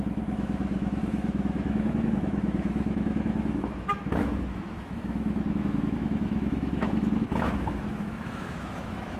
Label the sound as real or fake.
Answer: fake